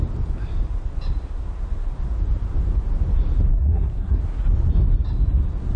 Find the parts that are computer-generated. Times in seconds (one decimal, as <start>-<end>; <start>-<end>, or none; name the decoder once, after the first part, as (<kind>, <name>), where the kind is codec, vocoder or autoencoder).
3.5-4.2 (codec, SNAC)